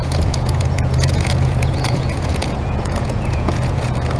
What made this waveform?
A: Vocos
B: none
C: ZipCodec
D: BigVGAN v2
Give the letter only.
A